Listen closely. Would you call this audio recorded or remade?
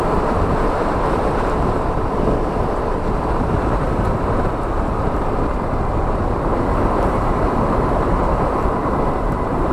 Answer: remade